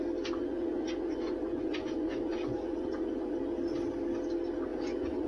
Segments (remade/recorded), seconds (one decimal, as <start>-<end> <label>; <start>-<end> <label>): 0.0-0.4 recorded; 0.4-3.3 remade; 3.3-4.7 recorded; 4.7-5.3 remade